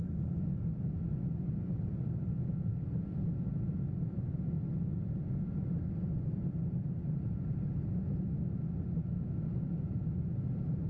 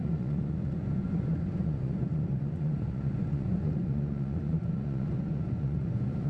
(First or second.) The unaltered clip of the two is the first